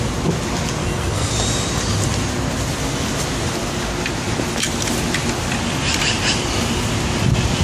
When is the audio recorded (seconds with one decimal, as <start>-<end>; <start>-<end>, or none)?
0.0-0.8; 1.3-7.6